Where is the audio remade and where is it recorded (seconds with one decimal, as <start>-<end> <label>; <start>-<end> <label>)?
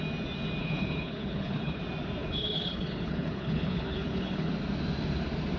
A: 0.0-0.6 recorded; 0.6-1.8 remade; 1.8-2.2 recorded; 2.2-4.5 remade; 4.5-5.6 recorded